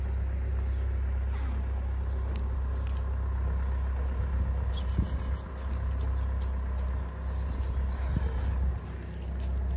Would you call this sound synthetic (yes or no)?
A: no